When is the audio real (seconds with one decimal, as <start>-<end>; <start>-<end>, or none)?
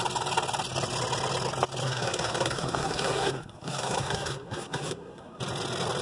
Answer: 0.0-1.8; 5.4-6.0